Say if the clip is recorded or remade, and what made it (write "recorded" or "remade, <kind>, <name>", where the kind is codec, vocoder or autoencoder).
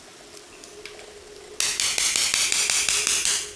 recorded